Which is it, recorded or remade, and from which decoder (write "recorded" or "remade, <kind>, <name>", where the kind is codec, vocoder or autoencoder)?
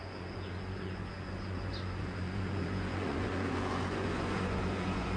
remade, vocoder, Vocos